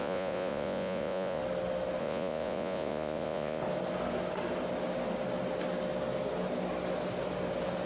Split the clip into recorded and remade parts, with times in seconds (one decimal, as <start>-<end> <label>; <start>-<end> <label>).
0.0-1.4 remade; 1.4-2.0 recorded; 2.0-3.6 remade; 3.6-7.9 recorded